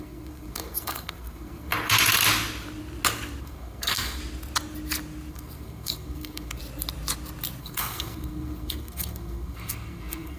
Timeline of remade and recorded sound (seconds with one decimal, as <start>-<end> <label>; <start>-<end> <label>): 0.0-1.7 remade; 1.7-3.4 recorded; 3.4-4.2 remade; 4.2-5.3 recorded; 5.3-6.6 remade; 6.6-7.6 recorded; 7.6-10.4 remade